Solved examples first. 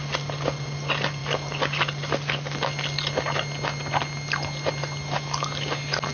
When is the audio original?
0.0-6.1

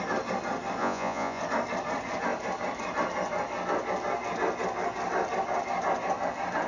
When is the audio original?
0.0-0.8; 1.4-6.7

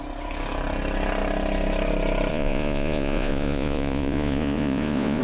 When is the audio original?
0.0-2.3

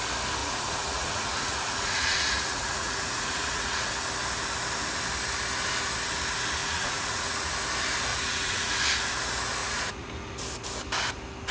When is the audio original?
0.0-0.4; 3.9-6.6; 7.5-8.1; 8.7-9.6; 10.1-11.5

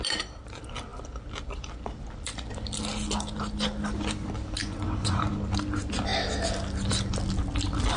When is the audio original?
0.0-4.6; 5.3-8.0